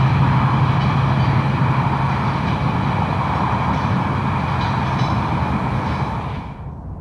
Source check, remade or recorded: recorded